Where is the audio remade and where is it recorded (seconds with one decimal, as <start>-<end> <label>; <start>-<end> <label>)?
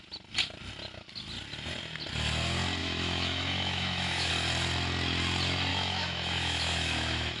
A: 0.0-2.8 recorded; 2.8-4.3 remade; 4.3-5.7 recorded; 5.7-7.4 remade